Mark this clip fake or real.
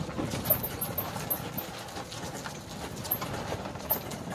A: real